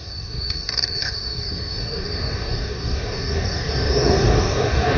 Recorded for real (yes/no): no